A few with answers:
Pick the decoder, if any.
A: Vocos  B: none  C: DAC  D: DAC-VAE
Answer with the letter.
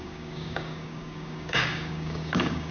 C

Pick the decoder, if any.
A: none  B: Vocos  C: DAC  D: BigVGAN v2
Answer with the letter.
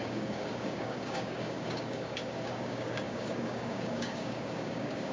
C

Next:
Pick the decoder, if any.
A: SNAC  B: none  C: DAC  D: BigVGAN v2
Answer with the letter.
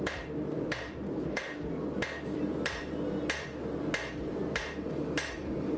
B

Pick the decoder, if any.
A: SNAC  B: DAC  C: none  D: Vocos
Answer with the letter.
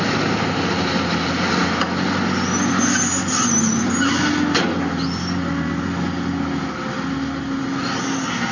C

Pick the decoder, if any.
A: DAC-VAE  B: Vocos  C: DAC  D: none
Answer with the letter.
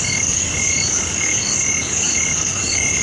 C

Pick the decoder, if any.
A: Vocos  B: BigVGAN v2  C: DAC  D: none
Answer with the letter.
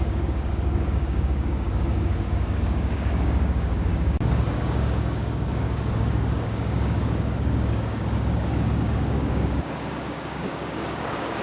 C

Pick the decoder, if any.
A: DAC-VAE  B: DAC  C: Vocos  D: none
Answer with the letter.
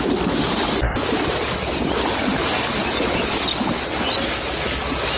D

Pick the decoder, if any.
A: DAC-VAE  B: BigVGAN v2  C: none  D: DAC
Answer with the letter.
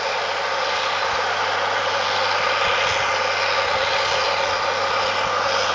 C